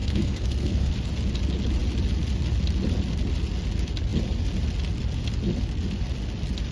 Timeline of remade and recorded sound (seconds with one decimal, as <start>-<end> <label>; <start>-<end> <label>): 0.0-0.9 remade; 0.9-6.7 recorded

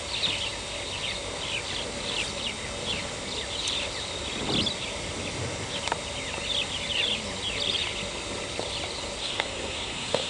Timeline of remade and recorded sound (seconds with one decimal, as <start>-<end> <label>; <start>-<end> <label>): 0.0-9.2 recorded; 9.2-10.3 remade

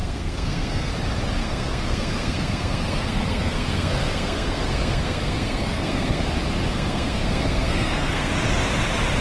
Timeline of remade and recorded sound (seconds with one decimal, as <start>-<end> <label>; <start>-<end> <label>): 0.0-0.9 remade; 0.9-1.4 recorded; 1.4-6.3 remade; 6.3-6.7 recorded; 6.7-8.3 remade; 8.3-9.2 recorded

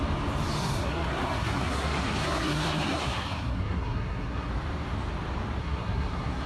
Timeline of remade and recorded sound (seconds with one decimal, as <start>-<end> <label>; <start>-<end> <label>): 0.0-0.6 recorded; 0.6-4.5 remade; 4.5-5.6 recorded; 5.6-6.5 remade

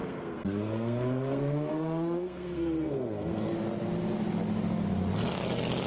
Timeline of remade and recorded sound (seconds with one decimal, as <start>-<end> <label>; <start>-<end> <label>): 0.0-3.5 remade; 3.5-5.9 recorded